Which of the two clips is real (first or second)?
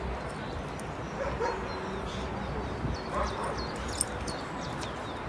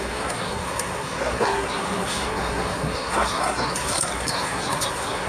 first